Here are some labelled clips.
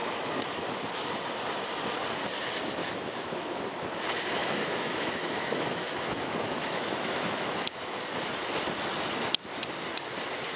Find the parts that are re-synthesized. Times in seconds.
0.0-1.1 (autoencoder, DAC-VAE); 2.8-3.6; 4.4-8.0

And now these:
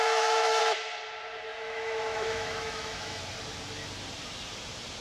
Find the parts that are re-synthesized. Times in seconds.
0.0-0.6 (autoencoder, DAC-VAE); 1.5-3.2

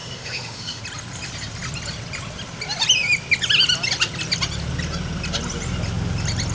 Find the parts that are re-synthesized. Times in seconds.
0.0-0.8 (autoencoder, DAC-VAE)

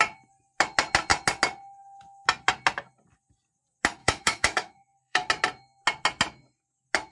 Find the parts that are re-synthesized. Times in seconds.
4.0-5.3 (autoencoder, DAC-VAE)

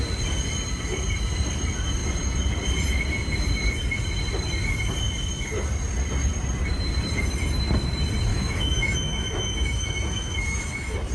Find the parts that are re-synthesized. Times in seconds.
8.3-11.1 (autoencoder, DAC-VAE)

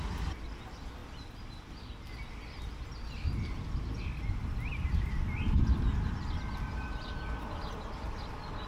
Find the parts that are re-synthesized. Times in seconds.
none

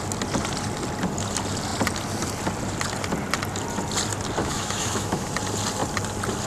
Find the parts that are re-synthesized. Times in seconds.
4.4-5.3 (autoencoder, DAC-VAE)